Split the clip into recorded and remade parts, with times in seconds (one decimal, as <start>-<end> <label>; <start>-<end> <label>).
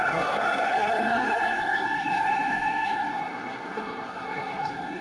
0.0-5.0 remade